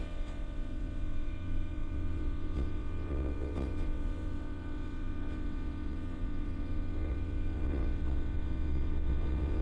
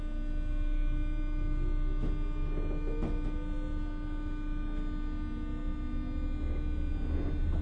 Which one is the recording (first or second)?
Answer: second